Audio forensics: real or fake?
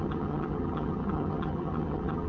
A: fake